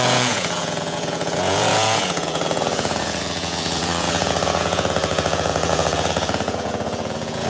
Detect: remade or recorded remade